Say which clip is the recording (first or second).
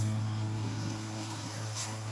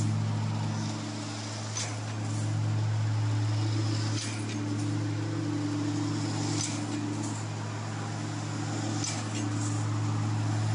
second